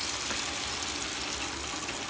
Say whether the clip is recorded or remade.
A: recorded